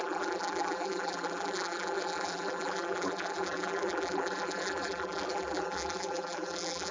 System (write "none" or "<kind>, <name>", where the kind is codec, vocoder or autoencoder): vocoder, BigVGAN v2